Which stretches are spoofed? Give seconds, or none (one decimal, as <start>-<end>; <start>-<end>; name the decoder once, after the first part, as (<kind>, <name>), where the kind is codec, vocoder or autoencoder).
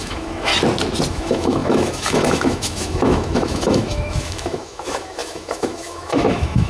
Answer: 0.0-0.5 (autoencoder, DAC-VAE); 1.1-6.7